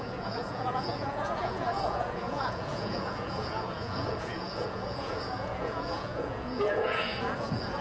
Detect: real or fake fake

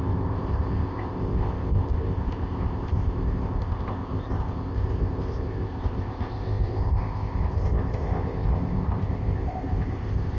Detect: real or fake fake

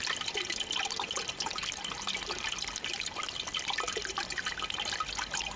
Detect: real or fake real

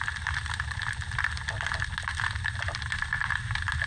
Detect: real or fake real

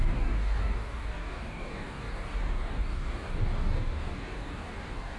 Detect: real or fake fake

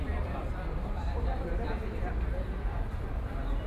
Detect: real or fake fake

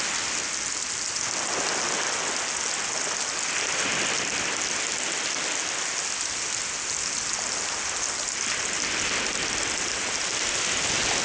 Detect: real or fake real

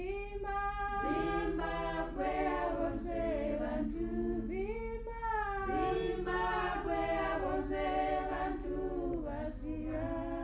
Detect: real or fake real